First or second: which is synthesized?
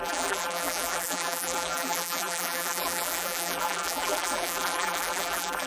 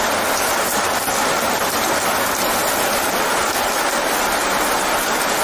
first